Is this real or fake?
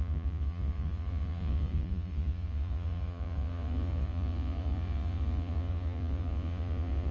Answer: fake